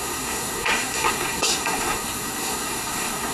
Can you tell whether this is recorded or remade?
remade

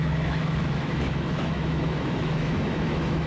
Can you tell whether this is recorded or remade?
remade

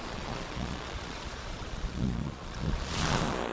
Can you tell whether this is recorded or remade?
remade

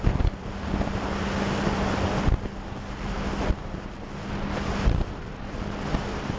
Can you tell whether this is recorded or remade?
recorded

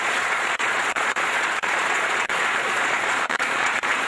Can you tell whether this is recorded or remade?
remade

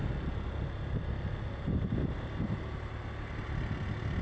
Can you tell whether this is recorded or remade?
recorded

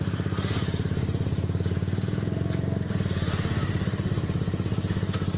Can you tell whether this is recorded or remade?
recorded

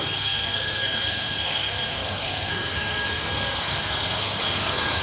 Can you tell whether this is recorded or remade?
remade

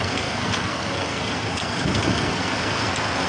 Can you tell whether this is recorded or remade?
remade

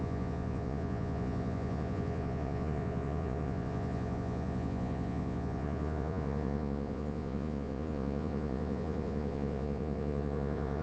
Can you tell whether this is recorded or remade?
remade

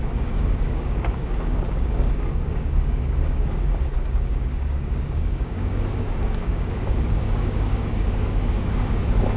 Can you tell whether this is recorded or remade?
remade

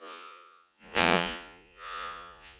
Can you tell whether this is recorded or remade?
remade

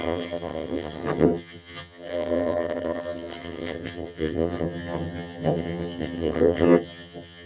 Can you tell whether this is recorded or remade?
remade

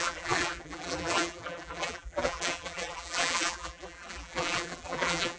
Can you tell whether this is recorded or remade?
remade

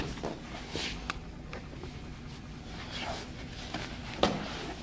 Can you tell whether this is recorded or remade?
recorded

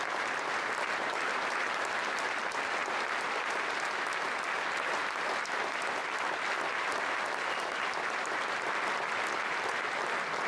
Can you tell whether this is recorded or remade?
recorded